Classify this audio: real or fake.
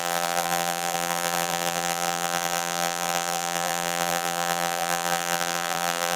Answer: fake